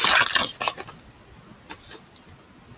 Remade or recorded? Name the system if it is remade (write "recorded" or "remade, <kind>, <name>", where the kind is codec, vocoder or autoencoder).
recorded